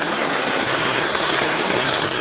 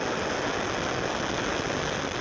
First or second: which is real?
second